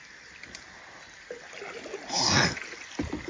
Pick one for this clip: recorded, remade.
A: recorded